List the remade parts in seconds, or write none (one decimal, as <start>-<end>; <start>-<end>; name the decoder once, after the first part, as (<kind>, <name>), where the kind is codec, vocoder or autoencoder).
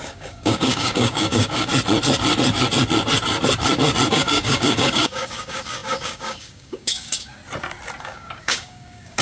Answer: 0.0-1.7 (codec, DAC); 4.1-7.4; 8.0-9.2